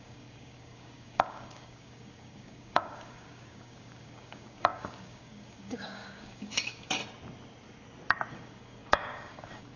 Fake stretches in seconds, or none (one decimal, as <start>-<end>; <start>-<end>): 0.0-7.0; 8.3-9.8